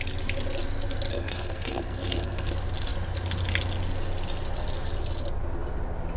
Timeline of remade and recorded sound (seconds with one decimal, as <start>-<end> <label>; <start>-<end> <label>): 0.0-1.1 recorded; 1.1-2.5 remade; 2.5-6.2 recorded